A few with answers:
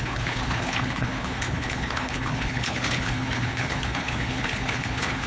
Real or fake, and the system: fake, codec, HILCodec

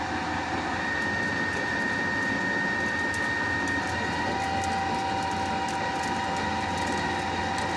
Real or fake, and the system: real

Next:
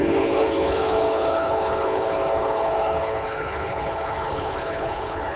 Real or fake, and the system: fake, codec, HILCodec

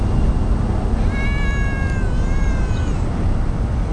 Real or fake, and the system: real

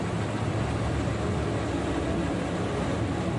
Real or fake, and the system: real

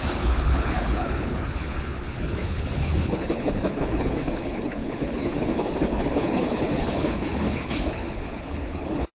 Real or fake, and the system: fake, codec, HILCodec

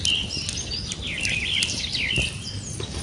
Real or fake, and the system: real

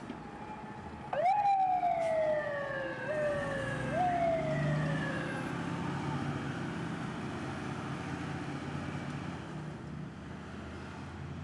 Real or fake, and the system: real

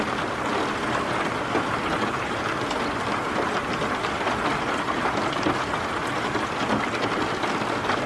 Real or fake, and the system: real